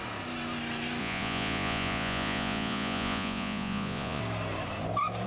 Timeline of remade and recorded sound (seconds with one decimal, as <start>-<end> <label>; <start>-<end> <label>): 0.0-1.0 recorded; 1.0-4.2 remade; 4.2-5.3 recorded